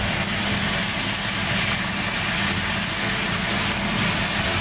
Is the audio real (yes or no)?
yes